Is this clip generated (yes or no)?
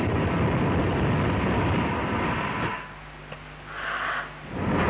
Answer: no